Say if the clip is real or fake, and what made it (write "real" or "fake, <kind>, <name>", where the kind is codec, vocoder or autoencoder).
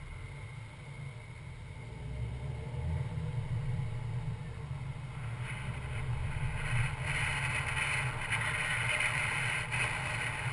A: real